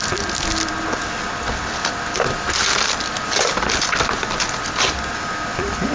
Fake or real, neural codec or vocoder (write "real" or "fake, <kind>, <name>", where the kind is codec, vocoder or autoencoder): real